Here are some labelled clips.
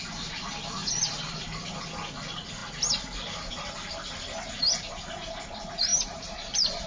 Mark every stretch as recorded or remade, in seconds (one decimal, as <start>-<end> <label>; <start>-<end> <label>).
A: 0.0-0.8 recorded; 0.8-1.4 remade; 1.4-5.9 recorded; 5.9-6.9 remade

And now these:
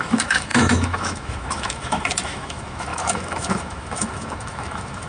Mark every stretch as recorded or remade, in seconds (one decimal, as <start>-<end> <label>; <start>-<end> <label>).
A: 0.0-5.1 remade

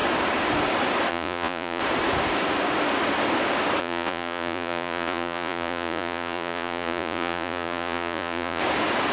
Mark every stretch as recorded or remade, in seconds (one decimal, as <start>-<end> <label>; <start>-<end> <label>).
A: 0.0-1.1 recorded; 1.1-1.8 remade; 1.8-3.8 recorded; 3.8-8.6 remade; 8.6-9.1 recorded